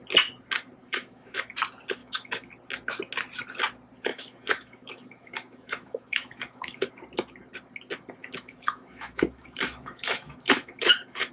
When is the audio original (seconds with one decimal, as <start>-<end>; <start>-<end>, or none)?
0.0-0.8; 1.5-2.0; 2.5-4.1; 6.9-8.2